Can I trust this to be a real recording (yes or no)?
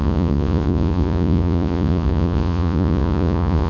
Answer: no